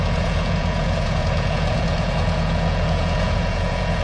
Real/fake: fake